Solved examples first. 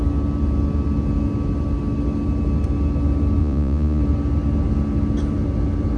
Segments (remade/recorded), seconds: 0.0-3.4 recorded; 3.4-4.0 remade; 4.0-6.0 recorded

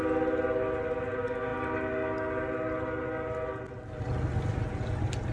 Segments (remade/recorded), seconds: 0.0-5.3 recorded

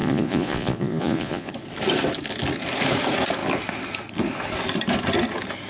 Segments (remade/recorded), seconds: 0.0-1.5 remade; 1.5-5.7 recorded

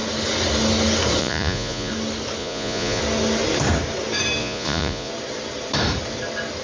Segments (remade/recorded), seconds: 0.0-1.2 recorded; 1.2-1.9 remade; 1.9-2.4 recorded; 2.4-3.0 remade; 3.0-4.4 recorded; 4.4-5.1 remade; 5.1-6.6 recorded

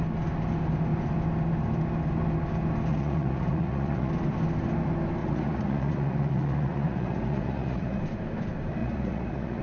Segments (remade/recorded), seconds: 0.0-2.9 recorded; 2.9-4.1 remade; 4.1-5.2 recorded; 5.2-8.0 remade; 8.0-8.8 recorded; 8.8-9.6 remade

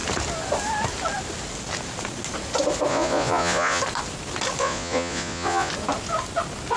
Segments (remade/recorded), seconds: 0.0-2.9 recorded; 2.9-3.8 remade; 3.8-4.6 recorded; 4.6-5.7 remade; 5.7-6.8 recorded

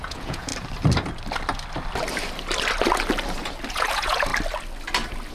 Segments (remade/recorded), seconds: 0.0-0.5 remade; 0.5-3.7 recorded; 3.7-4.3 remade; 4.3-5.3 recorded